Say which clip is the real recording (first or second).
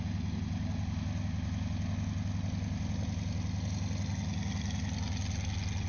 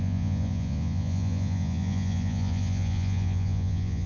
first